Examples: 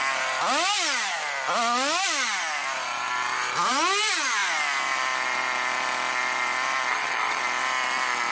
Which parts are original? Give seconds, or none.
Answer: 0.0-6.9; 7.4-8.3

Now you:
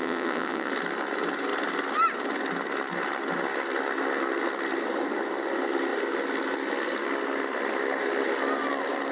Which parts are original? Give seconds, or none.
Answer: 0.7-9.1

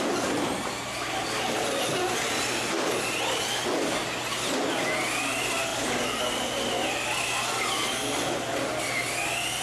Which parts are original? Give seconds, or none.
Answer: 0.0-9.6

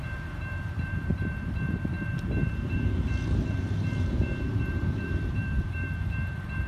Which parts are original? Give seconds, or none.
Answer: none

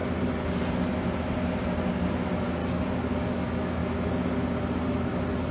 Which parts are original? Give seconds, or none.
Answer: 0.0-2.1; 2.6-3.3; 3.8-5.5

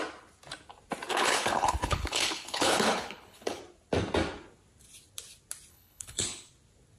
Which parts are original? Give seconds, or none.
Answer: 0.0-1.1; 3.6-5.7; 6.5-7.0

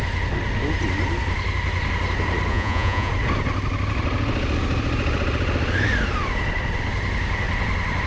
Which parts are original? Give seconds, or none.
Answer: 0.0-2.5; 3.1-8.1